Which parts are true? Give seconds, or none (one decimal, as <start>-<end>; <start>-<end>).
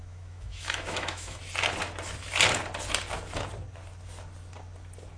1.4-5.2